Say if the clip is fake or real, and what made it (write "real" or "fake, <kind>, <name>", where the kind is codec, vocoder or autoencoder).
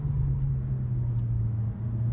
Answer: real